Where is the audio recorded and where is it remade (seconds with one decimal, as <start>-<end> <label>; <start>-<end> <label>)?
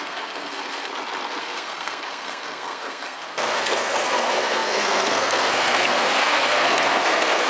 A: 0.0-0.9 remade; 0.9-1.4 recorded; 1.4-7.5 remade